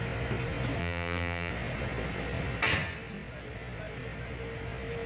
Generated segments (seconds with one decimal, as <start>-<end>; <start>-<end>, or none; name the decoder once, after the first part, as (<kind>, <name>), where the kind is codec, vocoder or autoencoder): 0.8-1.5 (vocoder, BigVGAN v2)